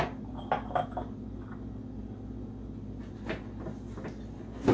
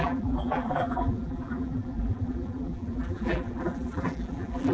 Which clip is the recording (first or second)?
first